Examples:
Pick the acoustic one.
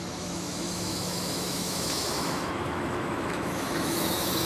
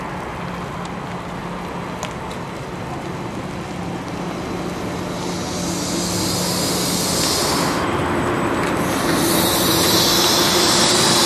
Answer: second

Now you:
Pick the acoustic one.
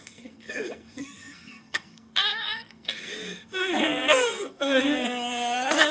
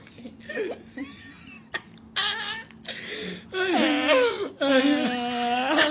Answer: second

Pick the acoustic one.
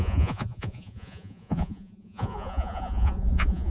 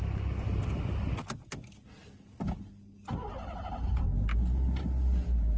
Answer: second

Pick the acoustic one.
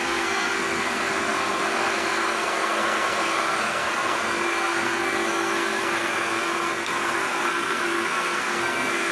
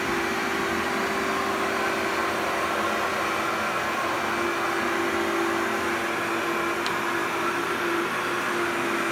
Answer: second